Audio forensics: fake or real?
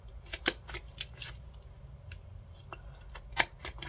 real